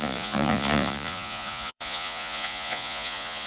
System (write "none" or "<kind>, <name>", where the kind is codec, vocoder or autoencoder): vocoder, Vocos